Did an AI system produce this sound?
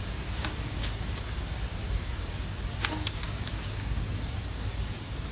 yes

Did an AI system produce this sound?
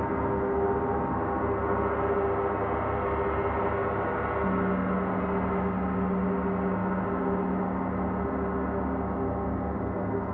no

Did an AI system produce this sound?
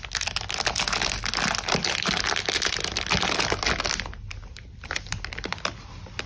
no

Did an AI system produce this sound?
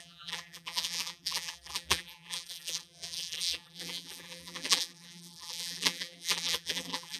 yes